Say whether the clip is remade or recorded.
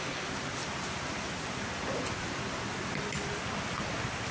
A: recorded